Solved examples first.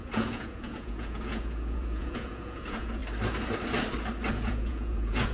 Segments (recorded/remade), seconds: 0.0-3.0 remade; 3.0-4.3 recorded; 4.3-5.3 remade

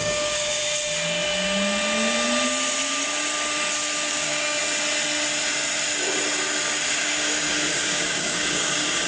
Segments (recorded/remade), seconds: 0.0-0.6 remade; 0.6-4.1 recorded; 4.1-4.6 remade; 4.6-6.9 recorded; 6.9-9.1 remade

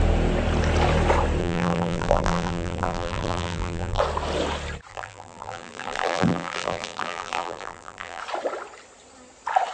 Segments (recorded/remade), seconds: 0.0-1.4 recorded; 1.4-4.0 remade; 4.0-4.9 recorded; 4.9-8.2 remade; 8.2-9.7 recorded